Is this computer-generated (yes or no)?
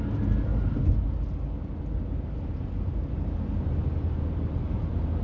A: no